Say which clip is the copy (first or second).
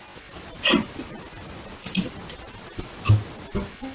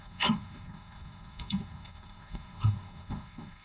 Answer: second